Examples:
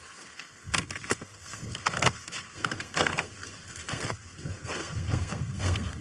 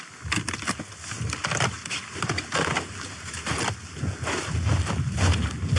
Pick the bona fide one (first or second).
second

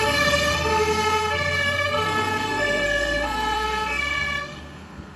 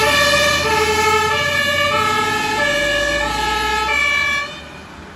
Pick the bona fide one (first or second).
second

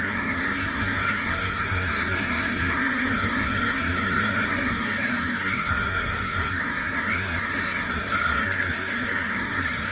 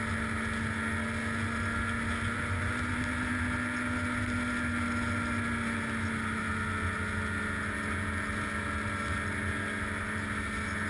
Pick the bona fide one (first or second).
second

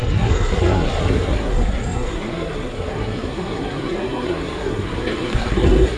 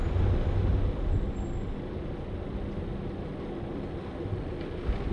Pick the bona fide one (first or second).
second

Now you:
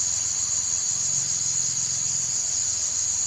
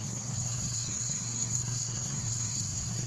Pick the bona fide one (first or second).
first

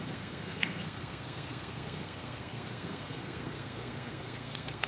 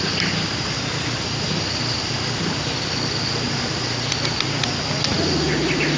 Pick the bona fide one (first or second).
second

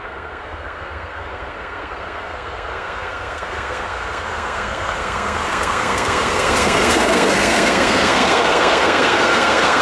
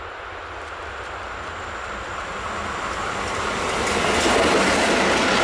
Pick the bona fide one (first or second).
second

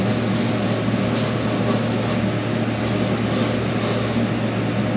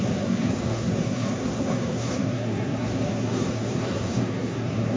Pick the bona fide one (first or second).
first